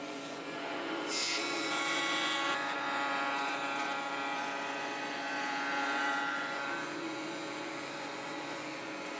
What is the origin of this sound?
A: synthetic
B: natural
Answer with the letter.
A